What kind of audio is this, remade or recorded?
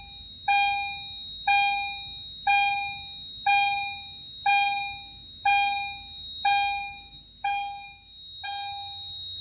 recorded